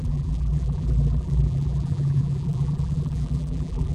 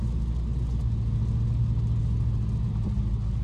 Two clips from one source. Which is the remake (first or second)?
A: first